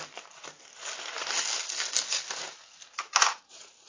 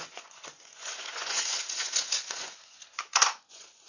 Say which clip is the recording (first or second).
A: first